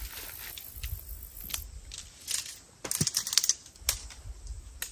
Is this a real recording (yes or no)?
yes